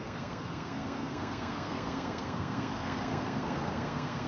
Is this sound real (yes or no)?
no